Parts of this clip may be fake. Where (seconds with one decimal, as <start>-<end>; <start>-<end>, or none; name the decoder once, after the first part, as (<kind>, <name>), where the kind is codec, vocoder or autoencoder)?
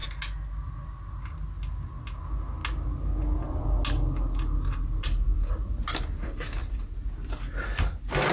none